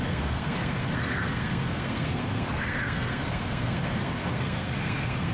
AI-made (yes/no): yes